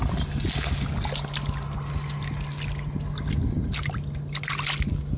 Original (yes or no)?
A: yes